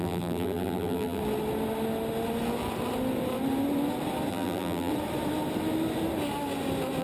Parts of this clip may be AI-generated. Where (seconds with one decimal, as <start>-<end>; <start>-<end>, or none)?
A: 0.0-1.2; 4.3-4.9